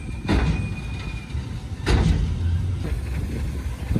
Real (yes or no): yes